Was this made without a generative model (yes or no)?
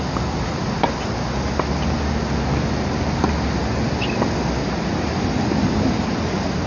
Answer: yes